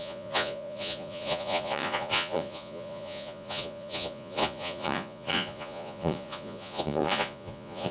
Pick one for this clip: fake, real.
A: fake